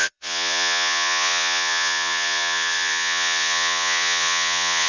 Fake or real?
fake